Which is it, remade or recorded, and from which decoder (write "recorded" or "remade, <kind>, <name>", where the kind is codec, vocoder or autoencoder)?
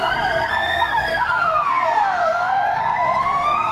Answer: remade, codec, SNAC